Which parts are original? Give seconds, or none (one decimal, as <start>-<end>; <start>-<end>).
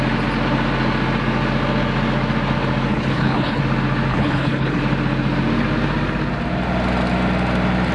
0.0-2.9; 3.6-4.1; 4.8-7.9